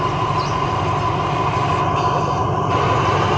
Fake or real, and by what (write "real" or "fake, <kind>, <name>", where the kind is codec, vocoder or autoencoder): real